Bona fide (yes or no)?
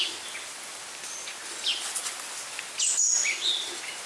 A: yes